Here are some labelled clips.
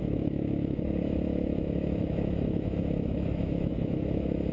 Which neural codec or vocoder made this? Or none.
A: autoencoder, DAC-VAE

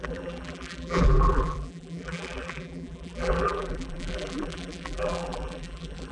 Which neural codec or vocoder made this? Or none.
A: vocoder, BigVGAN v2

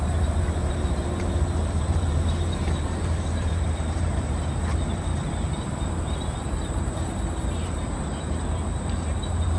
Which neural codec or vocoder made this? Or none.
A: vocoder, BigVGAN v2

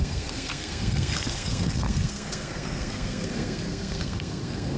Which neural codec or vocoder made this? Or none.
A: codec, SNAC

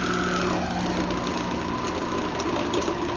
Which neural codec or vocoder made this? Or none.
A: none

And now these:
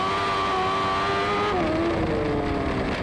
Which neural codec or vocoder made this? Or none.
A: none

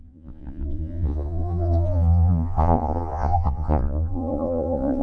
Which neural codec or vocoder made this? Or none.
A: vocoder, Vocos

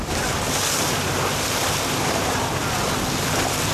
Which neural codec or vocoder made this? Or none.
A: none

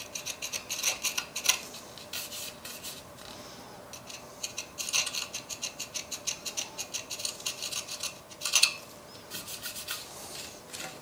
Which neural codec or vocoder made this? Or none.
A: none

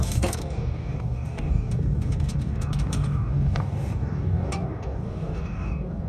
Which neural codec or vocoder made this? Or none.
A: codec, DAC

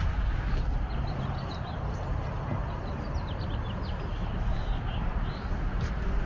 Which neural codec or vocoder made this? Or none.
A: none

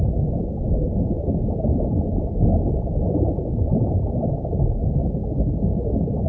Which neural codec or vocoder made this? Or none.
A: none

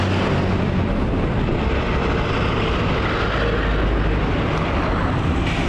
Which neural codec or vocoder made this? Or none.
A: none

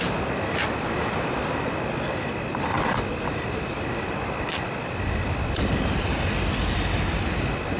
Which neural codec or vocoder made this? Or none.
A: none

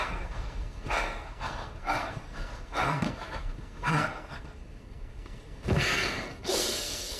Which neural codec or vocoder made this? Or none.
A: codec, SNAC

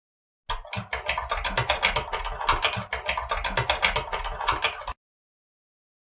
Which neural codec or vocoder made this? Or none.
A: none